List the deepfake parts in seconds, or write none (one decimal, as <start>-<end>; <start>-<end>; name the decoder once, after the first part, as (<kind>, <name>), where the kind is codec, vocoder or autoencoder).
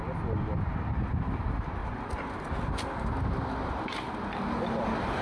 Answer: none